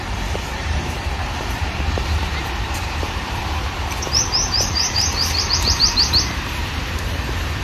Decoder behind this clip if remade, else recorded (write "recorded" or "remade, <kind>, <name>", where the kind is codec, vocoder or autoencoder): remade, vocoder, BigVGAN v2